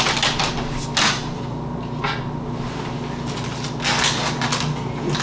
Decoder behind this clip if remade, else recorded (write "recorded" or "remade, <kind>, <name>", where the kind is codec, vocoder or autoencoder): recorded